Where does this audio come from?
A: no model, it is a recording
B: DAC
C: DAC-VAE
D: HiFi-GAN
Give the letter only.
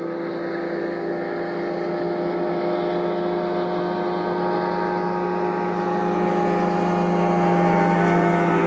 A